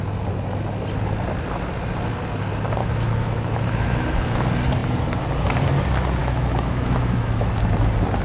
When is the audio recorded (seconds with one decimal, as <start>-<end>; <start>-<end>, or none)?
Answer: 0.0-2.8; 4.1-6.2; 7.5-8.2